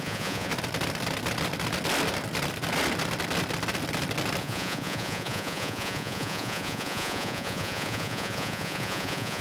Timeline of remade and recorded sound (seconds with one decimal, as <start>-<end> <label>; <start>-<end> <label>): 0.0-0.5 remade; 0.5-4.4 recorded; 4.4-9.4 remade